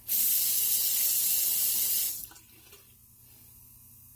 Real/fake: real